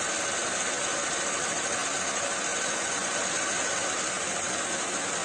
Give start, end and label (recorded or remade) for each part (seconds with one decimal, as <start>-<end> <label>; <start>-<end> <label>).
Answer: 0.0-2.5 recorded; 2.5-3.2 remade; 3.2-5.2 recorded